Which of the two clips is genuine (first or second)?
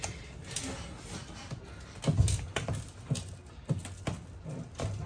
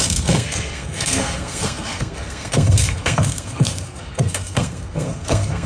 first